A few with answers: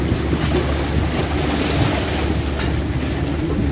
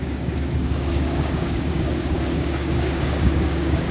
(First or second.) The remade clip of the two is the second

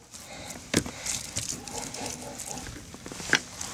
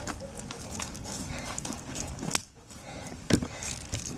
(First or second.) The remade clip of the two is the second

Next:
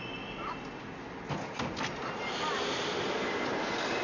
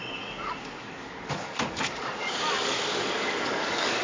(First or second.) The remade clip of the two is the second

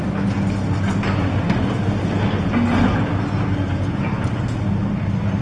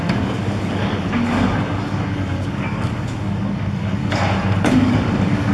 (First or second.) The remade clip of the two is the second